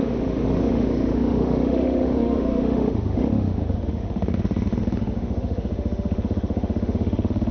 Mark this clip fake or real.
fake